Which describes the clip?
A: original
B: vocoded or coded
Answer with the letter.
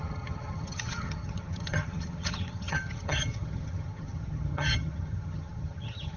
B